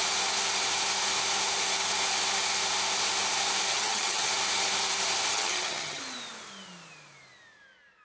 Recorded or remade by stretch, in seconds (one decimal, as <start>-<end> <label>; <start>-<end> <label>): 0.0-3.7 recorded; 3.7-4.3 remade; 4.3-5.3 recorded; 5.3-6.0 remade; 6.0-8.0 recorded